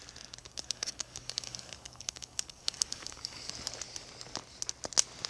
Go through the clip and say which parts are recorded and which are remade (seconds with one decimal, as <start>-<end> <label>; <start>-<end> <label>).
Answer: 0.0-0.4 recorded; 0.4-3.5 remade; 3.5-5.3 recorded